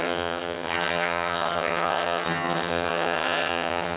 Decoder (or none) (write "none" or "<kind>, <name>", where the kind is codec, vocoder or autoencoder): vocoder, HiFi-GAN